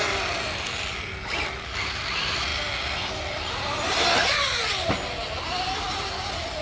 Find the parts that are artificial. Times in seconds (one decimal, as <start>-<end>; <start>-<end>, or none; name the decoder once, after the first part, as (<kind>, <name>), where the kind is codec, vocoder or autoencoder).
none